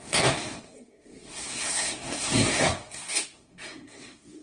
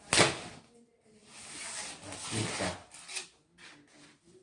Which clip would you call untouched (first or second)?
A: second